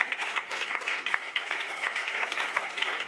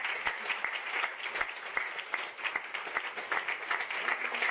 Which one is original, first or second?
second